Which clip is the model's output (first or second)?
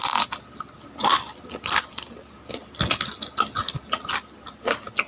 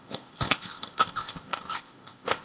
second